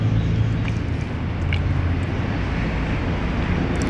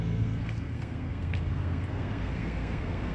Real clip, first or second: first